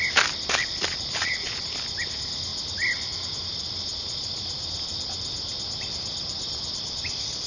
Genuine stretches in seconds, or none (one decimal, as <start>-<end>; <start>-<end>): 0.0-0.6; 1.6-7.5